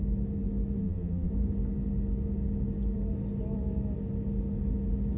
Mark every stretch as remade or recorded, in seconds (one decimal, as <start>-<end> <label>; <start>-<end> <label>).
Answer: 0.0-0.8 recorded; 0.8-1.3 remade; 1.3-5.2 recorded